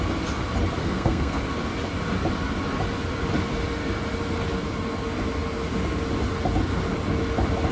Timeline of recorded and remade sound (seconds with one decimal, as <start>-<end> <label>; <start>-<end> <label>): 0.0-0.8 recorded; 0.8-1.4 remade; 1.4-7.7 recorded